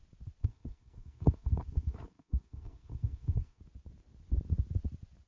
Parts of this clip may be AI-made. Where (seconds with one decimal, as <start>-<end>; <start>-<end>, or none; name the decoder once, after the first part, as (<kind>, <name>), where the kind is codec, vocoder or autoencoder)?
0.4-3.6 (codec, SNAC)